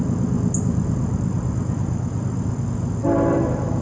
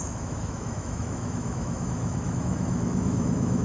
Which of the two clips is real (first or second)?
first